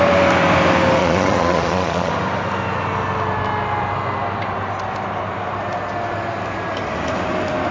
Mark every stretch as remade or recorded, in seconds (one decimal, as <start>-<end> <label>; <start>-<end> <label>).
0.0-1.0 recorded; 1.0-2.1 remade; 2.1-7.7 recorded